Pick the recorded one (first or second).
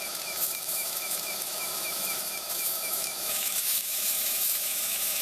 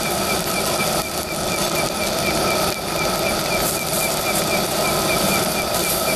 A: second